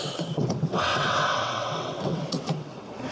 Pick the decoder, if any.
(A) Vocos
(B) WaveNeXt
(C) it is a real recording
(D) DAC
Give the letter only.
B